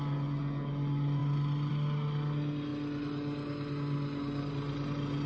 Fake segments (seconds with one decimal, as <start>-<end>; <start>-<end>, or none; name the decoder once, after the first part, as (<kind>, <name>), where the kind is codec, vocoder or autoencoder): none